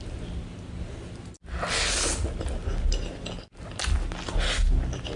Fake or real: real